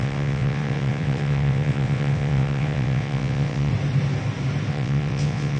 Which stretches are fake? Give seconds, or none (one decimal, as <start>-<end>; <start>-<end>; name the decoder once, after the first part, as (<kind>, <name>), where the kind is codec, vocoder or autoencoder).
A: 0.0-3.7 (vocoder, WaveNeXt); 4.7-5.6